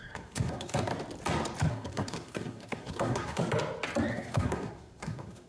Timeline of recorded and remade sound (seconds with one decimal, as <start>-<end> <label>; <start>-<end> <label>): 0.0-0.9 remade; 0.9-1.7 recorded; 1.7-3.4 remade; 3.4-4.1 recorded; 4.1-5.5 remade